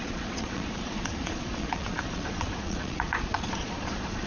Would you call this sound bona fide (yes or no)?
no